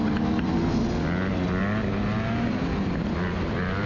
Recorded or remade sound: recorded